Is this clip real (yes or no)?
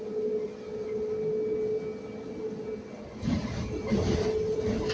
yes